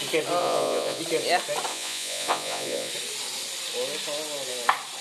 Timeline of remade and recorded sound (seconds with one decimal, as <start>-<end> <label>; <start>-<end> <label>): 0.0-0.4 recorded; 0.4-1.0 remade; 1.0-1.7 recorded; 1.7-2.9 remade; 2.9-5.0 recorded